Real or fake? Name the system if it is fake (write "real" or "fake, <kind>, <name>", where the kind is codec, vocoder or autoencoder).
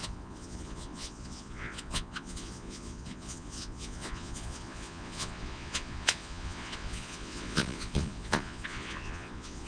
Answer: fake, vocoder, Vocos